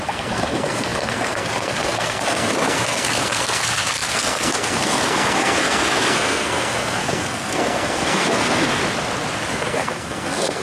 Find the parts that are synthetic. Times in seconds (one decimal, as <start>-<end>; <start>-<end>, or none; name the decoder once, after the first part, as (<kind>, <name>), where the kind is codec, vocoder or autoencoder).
0.0-8.8 (codec, SNAC); 9.5-10.6